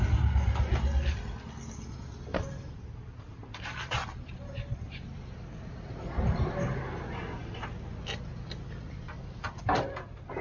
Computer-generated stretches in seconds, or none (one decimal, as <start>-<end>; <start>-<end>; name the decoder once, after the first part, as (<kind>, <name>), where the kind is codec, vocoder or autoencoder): none